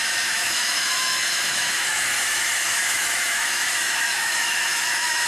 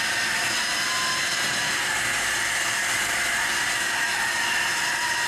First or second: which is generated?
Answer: first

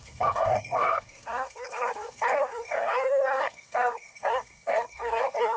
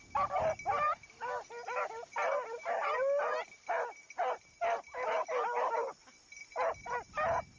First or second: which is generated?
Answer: first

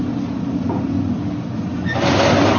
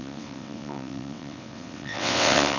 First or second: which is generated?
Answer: second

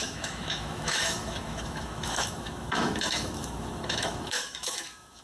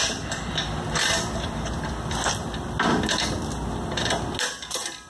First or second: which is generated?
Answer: first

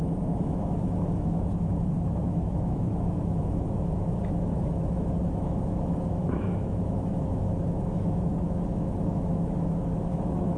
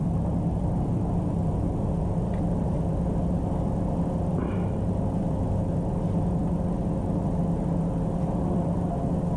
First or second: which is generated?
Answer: first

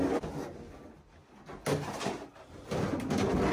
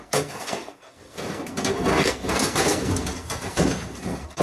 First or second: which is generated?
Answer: second